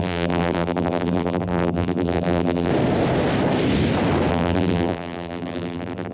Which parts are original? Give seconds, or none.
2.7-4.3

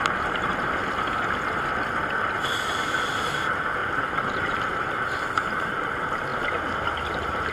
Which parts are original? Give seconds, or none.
0.8-3.2; 6.3-7.1

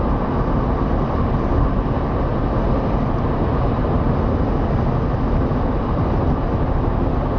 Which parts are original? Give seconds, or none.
0.0-7.4

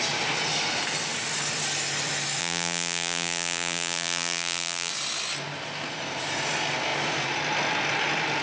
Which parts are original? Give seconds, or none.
0.0-2.4; 4.9-8.4